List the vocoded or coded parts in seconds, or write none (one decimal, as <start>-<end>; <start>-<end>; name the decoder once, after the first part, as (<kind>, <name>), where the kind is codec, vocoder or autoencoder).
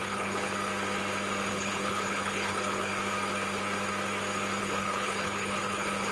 0.0-0.5 (codec, HILCodec); 1.5-2.9; 4.6-6.1